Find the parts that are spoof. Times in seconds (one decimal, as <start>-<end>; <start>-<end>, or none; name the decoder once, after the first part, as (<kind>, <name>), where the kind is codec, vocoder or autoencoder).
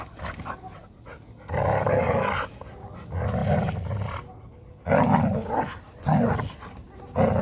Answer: none